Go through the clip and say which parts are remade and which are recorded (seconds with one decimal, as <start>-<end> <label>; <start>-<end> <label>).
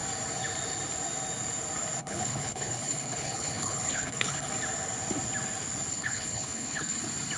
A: 0.0-2.0 recorded; 2.0-4.5 remade; 4.5-5.9 recorded; 5.9-7.0 remade; 7.0-7.4 recorded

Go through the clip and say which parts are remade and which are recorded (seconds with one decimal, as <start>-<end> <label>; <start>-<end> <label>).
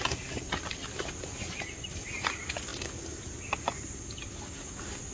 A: 0.0-5.1 recorded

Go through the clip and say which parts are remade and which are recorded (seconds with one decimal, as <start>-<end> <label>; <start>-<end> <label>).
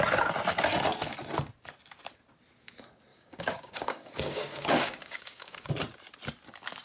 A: 0.0-3.1 recorded; 3.1-5.7 remade; 5.7-6.8 recorded